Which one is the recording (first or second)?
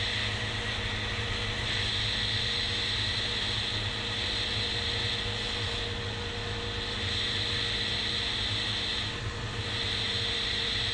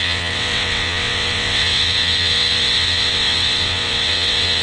first